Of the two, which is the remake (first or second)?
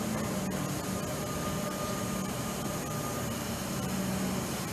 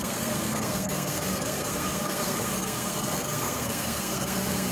second